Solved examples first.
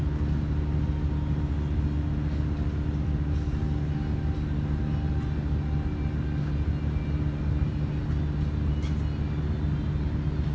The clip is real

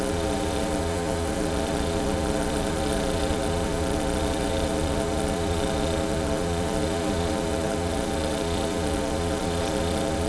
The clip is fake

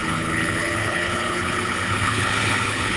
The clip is fake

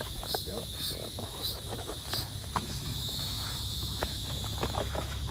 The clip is fake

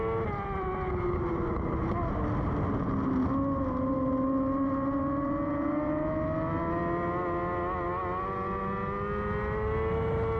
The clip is real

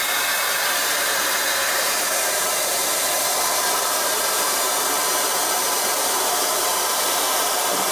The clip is fake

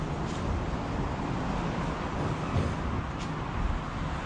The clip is real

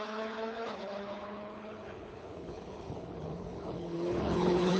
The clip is fake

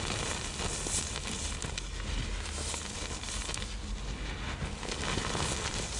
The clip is real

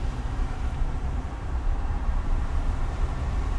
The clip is fake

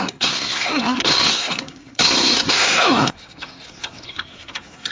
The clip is fake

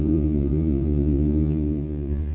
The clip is fake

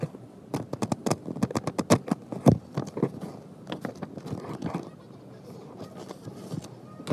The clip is real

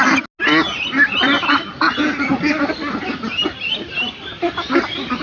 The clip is real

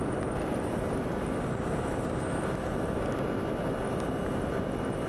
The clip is real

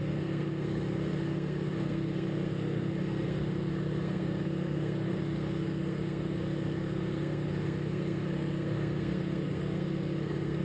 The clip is fake